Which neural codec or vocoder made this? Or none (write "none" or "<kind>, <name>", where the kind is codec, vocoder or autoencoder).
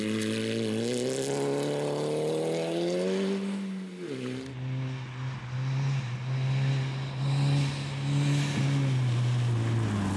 none